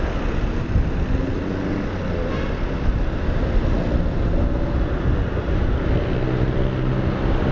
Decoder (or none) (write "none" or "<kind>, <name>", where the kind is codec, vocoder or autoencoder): none